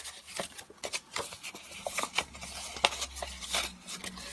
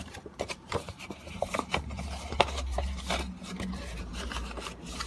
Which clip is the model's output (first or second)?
second